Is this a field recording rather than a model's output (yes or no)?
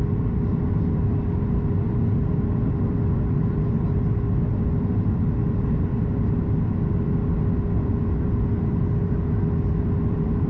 yes